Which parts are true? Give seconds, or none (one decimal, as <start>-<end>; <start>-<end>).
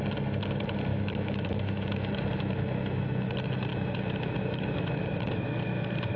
0.0-0.9; 3.3-3.7; 5.0-6.2